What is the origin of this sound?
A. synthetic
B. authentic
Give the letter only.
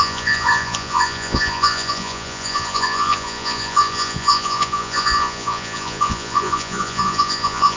A